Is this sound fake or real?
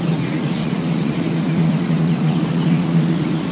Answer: fake